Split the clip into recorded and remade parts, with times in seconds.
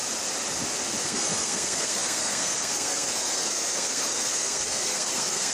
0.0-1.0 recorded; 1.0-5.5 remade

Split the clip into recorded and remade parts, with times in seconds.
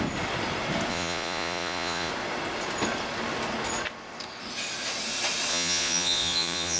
0.0-0.9 recorded; 0.9-2.1 remade; 2.1-5.5 recorded; 5.5-6.8 remade